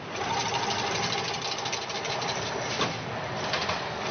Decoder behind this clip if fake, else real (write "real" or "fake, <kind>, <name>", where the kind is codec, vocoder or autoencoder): real